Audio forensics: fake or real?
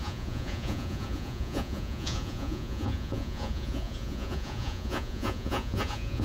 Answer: fake